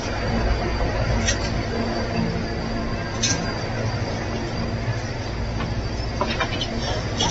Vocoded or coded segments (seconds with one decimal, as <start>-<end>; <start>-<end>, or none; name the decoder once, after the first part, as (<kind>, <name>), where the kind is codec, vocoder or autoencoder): none